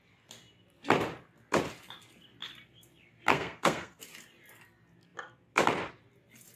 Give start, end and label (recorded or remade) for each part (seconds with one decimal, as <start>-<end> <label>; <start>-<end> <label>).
0.0-3.3 recorded; 3.3-4.0 remade; 4.0-6.6 recorded